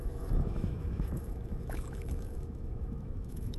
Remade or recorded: remade